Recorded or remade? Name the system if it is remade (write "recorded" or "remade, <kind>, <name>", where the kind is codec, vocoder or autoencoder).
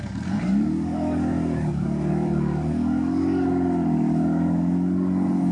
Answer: remade, codec, DAC